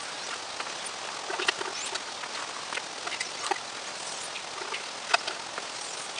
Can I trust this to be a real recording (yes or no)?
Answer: yes